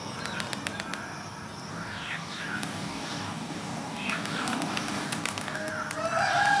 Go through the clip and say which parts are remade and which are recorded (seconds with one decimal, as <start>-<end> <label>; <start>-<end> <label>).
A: 0.0-1.7 recorded; 1.7-5.7 remade; 5.7-6.6 recorded